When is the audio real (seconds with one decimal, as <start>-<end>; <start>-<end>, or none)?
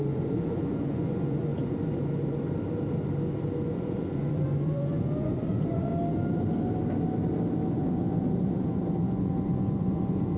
1.5-3.7; 5.9-7.7